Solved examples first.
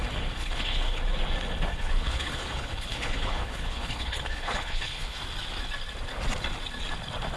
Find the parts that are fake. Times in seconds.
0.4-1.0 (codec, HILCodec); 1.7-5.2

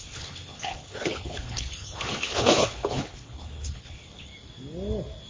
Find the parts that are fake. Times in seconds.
0.0-4.3 (codec, HILCodec)